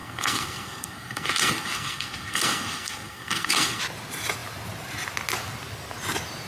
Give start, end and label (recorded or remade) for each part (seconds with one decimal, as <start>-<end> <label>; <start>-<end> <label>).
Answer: 0.0-3.8 remade; 3.8-6.5 recorded